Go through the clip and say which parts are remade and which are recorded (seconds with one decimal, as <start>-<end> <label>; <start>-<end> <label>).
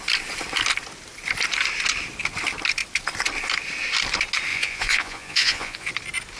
0.0-4.5 recorded; 4.5-5.9 remade; 5.9-6.4 recorded